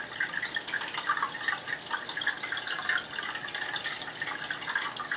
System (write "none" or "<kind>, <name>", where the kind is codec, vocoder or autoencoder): none